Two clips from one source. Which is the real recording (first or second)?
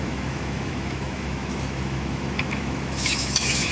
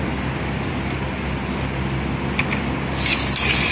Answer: second